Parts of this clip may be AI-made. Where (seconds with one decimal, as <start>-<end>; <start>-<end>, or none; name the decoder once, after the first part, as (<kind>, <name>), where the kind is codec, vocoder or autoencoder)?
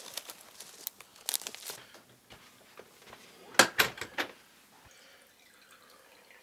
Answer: none